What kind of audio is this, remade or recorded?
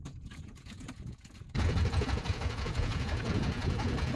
remade